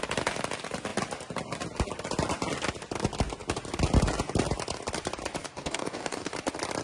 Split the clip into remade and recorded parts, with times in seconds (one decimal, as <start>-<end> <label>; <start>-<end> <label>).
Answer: 0.0-5.4 recorded; 5.4-6.3 remade; 6.3-6.8 recorded